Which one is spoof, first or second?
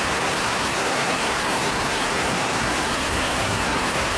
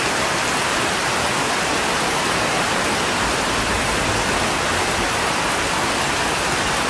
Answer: first